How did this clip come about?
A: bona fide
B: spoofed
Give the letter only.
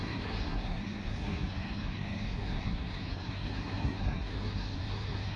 B